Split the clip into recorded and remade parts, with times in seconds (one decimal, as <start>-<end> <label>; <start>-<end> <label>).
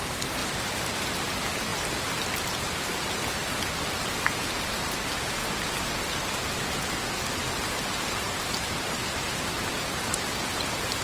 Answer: 0.0-5.4 remade; 5.4-7.6 recorded; 7.6-11.0 remade